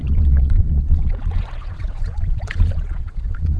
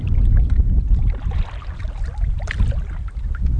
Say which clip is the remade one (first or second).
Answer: first